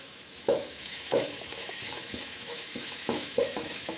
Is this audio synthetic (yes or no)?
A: yes